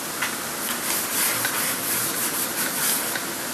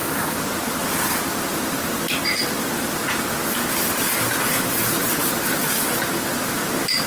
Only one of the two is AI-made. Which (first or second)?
second